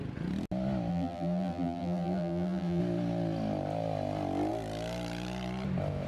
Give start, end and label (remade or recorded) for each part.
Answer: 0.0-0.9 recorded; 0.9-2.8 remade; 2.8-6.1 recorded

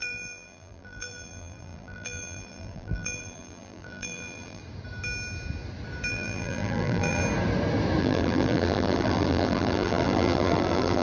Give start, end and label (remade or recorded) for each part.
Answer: 0.0-4.6 remade; 4.6-6.1 recorded; 6.1-7.2 remade; 7.2-8.0 recorded; 8.0-11.0 remade